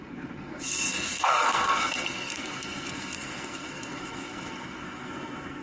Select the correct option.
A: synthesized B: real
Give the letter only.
A